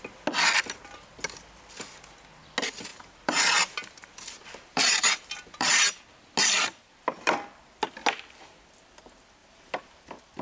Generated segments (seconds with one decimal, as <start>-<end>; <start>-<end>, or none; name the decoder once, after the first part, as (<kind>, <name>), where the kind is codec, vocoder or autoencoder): 2.9-6.0 (vocoder, BigVGAN v2); 9.4-10.0